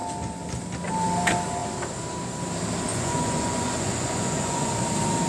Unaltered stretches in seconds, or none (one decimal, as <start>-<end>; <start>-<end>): 0.0-2.9; 4.7-5.3